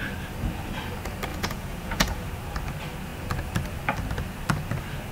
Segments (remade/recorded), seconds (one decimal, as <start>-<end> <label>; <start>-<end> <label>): 0.0-1.3 recorded; 1.3-2.3 remade; 2.3-5.1 recorded